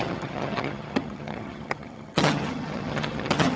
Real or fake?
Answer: fake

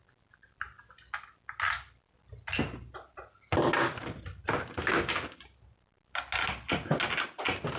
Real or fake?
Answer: real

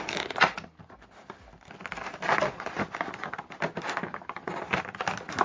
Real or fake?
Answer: real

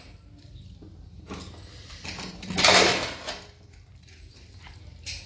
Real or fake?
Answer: real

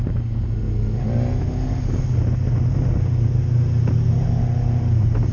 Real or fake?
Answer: real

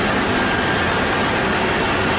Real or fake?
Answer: real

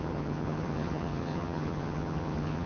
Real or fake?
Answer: fake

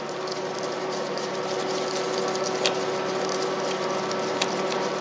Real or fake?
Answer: real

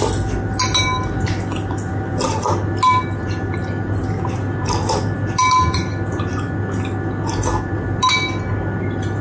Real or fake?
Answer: real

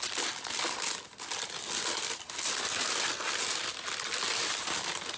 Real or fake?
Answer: real